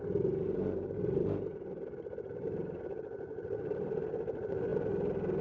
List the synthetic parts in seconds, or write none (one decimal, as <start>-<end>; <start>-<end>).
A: none